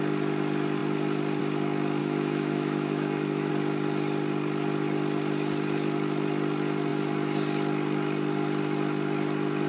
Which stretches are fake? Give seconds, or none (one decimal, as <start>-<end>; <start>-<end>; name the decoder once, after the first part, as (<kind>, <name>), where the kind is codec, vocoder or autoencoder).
2.0-3.5 (autoencoder, DAC-VAE)